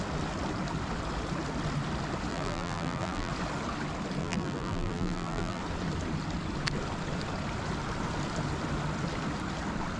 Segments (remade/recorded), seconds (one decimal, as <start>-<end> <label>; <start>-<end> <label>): 0.0-2.3 recorded; 2.3-3.3 remade; 3.3-4.2 recorded; 4.2-5.6 remade; 5.6-10.0 recorded